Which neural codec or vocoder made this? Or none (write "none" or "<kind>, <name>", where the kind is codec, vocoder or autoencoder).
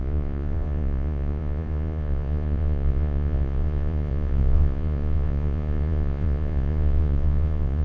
vocoder, Vocos